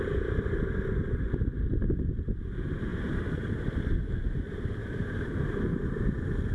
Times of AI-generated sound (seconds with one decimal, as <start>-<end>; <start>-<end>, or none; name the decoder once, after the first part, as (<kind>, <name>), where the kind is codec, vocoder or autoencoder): 4.8-5.7 (vocoder, BigVGAN v2)